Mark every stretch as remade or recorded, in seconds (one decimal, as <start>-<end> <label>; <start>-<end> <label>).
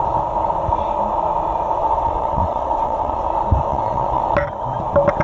0.0-1.8 recorded; 1.8-3.2 remade; 3.2-3.7 recorded; 3.7-4.2 remade; 4.2-5.2 recorded